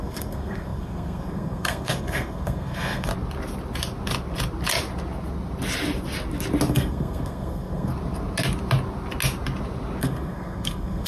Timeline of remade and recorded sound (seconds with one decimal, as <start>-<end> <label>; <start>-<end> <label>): 0.0-3.1 remade; 3.1-6.7 recorded; 6.7-7.9 remade; 7.9-10.0 recorded; 10.0-11.1 remade